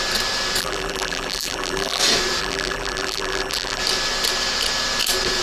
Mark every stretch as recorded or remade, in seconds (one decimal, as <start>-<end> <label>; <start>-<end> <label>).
0.0-0.6 recorded; 0.6-2.0 remade; 2.0-2.4 recorded; 2.4-3.8 remade; 3.8-5.4 recorded